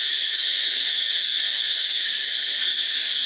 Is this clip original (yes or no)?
no